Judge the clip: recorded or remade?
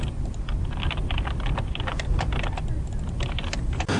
recorded